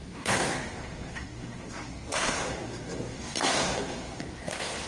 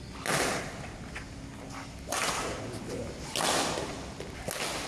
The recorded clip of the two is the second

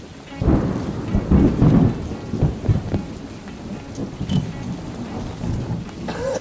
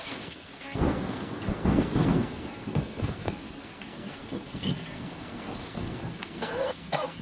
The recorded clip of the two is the first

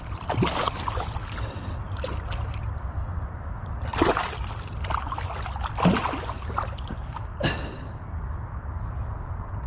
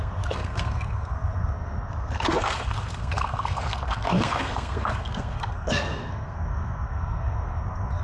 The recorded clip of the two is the first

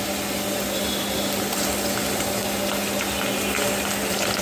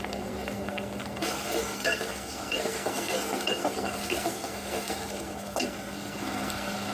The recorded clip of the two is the first